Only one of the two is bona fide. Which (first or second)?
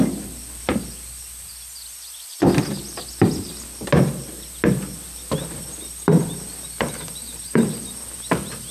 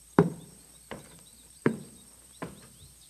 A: first